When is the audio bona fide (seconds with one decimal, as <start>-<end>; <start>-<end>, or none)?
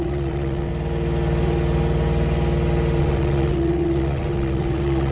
0.7-3.0